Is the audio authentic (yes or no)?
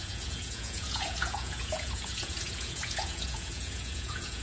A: no